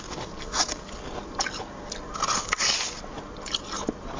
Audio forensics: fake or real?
real